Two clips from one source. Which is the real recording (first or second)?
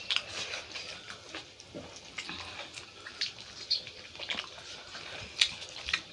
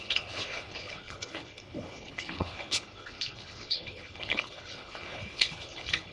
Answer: first